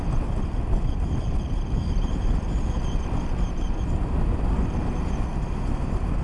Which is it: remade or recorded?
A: recorded